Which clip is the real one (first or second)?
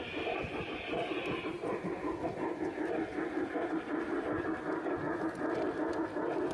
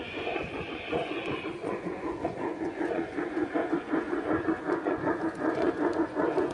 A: first